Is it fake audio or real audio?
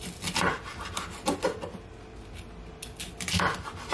real